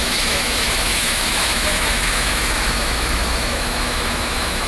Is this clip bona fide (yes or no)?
no